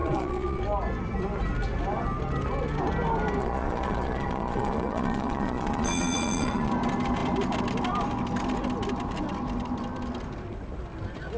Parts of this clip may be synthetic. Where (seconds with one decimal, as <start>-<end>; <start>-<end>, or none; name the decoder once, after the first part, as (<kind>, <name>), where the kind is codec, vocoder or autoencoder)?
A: 0.0-0.6 (vocoder, Vocos); 3.4-6.7